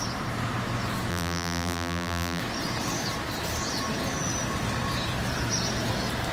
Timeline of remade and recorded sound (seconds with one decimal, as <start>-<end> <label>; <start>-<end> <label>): 0.0-1.1 recorded; 1.1-2.4 remade; 2.4-6.3 recorded